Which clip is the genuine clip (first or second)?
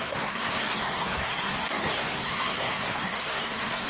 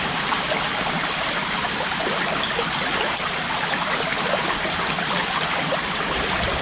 second